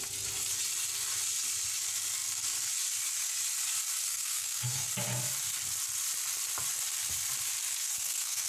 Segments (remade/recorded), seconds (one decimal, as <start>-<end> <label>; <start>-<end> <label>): 0.0-4.0 recorded; 4.0-4.9 remade; 4.9-7.8 recorded; 7.8-8.5 remade